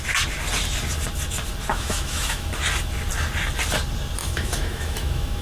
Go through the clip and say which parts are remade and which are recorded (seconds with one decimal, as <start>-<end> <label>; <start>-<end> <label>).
0.0-1.7 recorded; 1.7-2.5 remade; 2.5-4.2 recorded; 4.2-5.4 remade